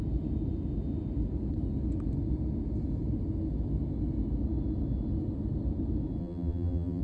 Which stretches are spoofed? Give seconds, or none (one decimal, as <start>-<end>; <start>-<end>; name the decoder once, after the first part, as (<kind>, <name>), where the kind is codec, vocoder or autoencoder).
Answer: 6.2-7.0 (vocoder, BigVGAN v2)